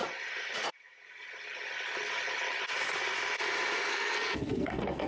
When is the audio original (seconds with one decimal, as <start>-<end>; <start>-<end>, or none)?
0.0-3.9